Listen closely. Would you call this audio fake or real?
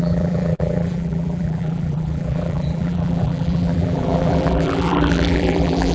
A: fake